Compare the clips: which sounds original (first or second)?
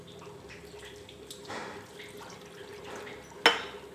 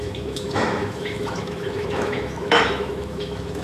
first